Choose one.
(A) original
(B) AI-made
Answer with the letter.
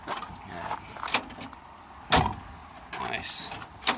A